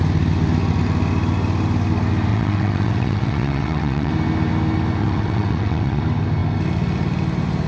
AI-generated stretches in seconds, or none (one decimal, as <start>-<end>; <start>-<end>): 2.3-4.1; 5.0-6.0